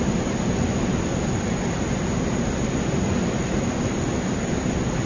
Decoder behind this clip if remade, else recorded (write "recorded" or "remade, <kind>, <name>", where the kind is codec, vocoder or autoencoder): recorded